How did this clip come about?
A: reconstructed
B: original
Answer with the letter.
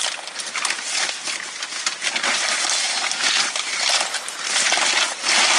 B